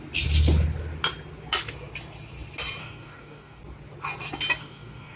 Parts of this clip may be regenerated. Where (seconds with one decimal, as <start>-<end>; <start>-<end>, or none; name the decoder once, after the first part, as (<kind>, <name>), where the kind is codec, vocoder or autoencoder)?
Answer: 2.8-3.6 (codec, DAC); 4.6-5.2